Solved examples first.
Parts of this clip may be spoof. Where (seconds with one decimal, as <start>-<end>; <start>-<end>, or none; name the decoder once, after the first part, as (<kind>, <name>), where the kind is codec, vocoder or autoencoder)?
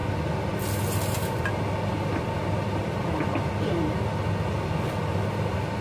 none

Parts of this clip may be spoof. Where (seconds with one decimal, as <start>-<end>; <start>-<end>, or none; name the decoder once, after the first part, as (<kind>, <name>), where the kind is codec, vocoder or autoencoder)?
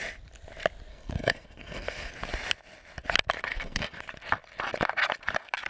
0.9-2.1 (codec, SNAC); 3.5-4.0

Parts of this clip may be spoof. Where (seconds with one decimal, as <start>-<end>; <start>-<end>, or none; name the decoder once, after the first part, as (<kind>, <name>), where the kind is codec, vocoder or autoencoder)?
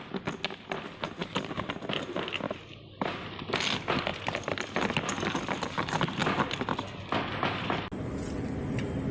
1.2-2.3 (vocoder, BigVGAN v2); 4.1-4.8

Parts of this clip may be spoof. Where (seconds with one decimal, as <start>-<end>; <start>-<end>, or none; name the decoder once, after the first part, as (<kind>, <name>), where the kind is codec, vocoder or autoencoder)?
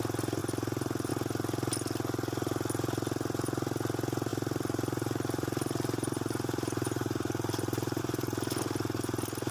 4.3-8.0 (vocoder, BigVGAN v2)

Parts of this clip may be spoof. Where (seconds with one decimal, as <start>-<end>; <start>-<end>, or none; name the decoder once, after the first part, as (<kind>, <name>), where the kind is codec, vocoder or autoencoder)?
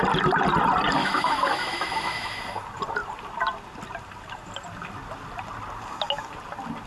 1.0-2.4 (autoencoder, DAC-VAE)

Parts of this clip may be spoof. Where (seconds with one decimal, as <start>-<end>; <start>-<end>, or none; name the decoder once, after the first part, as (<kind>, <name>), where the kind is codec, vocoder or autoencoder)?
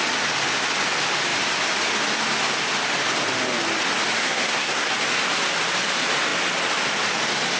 4.2-4.9 (codec, SNAC)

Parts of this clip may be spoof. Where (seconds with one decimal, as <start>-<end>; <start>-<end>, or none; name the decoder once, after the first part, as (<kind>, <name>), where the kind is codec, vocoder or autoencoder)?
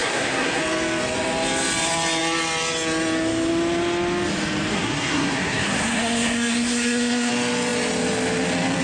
0.0-0.6 (codec, SNAC); 4.7-7.3